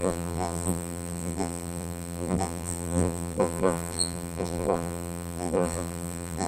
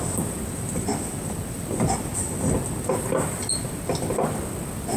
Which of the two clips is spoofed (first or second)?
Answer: first